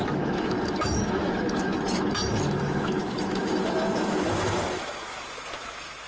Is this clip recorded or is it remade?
remade